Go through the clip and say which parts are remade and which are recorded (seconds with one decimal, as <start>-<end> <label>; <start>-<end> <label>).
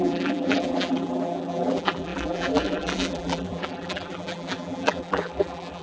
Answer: 0.0-5.8 remade